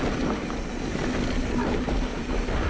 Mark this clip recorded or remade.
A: recorded